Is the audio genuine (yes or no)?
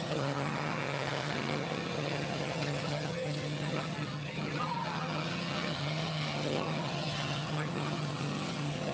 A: no